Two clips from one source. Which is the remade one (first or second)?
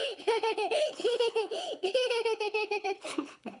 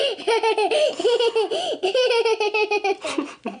first